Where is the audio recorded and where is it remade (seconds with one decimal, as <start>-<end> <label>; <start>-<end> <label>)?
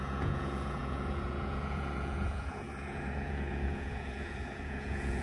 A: 0.0-5.2 remade